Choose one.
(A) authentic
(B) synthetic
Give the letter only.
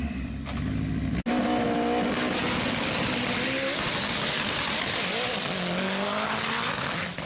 A